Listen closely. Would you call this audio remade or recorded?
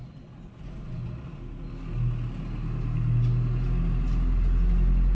recorded